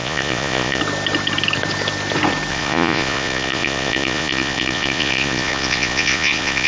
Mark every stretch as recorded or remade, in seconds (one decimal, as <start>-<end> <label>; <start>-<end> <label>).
0.0-0.8 remade; 0.8-2.5 recorded; 2.5-6.7 remade